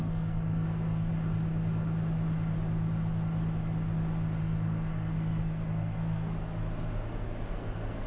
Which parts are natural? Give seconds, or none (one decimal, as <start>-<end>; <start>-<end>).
1.1-4.4; 6.4-7.1